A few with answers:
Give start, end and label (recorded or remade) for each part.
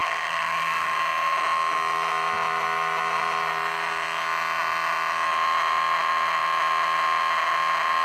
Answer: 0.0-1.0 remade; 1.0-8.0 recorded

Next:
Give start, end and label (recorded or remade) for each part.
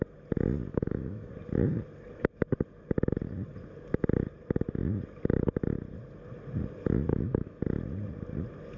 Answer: 0.0-0.7 recorded; 0.7-1.3 remade; 1.3-7.1 recorded; 7.1-7.6 remade; 7.6-8.8 recorded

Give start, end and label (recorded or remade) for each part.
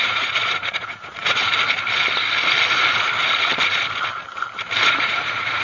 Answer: 0.0-1.5 remade; 1.5-4.9 recorded; 4.9-5.6 remade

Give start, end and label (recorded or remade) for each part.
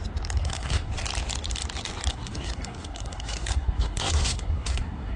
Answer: 0.0-0.4 recorded; 0.4-0.9 remade; 0.9-2.1 recorded; 2.1-5.2 remade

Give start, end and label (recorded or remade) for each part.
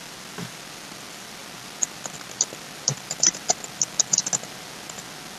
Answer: 0.0-5.4 recorded